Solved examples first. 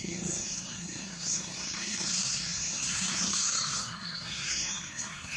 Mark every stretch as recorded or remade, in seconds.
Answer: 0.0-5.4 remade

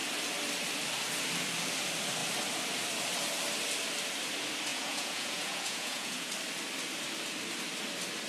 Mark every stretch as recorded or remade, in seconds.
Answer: 0.0-4.7 recorded; 4.7-6.3 remade; 6.3-8.3 recorded

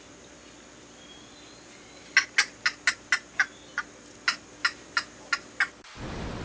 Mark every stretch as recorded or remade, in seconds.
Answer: 0.0-6.4 recorded